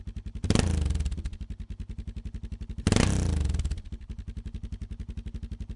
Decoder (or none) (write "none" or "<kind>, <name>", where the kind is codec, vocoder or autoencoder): none